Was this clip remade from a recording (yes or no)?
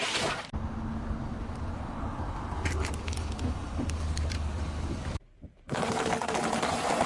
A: no